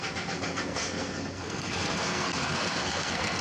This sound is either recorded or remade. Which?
remade